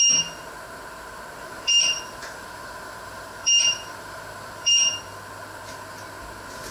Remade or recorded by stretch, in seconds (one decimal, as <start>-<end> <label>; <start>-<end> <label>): 0.0-1.4 recorded; 1.4-4.7 remade; 4.7-6.7 recorded